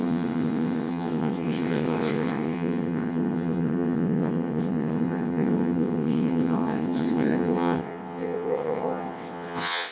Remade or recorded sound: remade